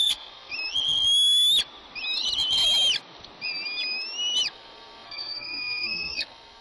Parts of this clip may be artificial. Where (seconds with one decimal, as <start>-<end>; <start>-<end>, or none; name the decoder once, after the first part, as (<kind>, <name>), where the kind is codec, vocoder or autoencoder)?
0.0-0.5 (codec, SNAC); 4.5-6.6